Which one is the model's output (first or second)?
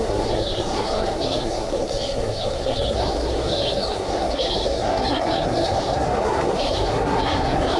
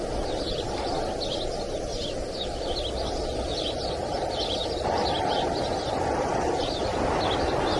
first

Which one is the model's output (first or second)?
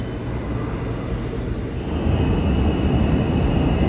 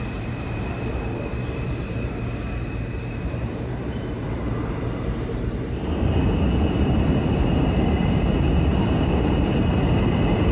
second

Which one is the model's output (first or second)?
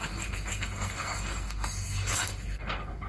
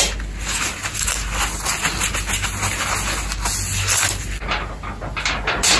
first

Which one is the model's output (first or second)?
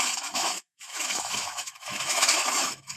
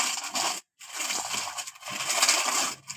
first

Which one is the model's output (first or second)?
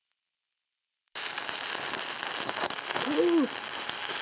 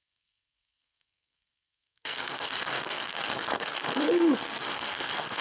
second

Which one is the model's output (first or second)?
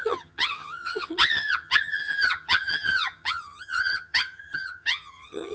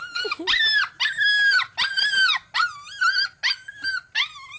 first